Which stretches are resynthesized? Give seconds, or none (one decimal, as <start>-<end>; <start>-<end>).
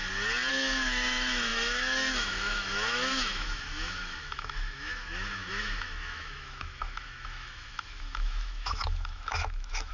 0.5-9.9